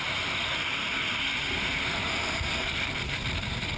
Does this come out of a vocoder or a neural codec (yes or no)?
no